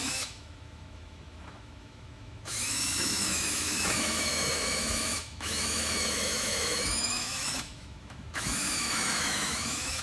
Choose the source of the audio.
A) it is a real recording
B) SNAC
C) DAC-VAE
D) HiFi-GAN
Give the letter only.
C